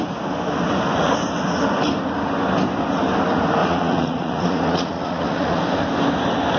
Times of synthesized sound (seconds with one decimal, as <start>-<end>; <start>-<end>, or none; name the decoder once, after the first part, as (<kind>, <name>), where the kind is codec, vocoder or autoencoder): 3.6-5.6 (vocoder, Vocos)